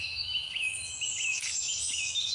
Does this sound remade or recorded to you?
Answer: remade